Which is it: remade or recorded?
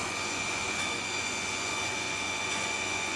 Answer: remade